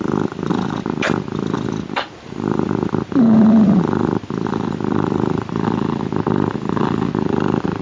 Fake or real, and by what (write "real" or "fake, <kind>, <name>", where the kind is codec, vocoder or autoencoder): fake, vocoder, BigVGAN v2